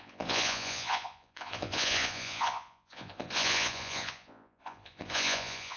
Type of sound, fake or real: fake